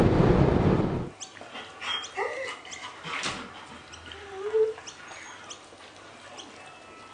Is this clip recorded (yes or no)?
yes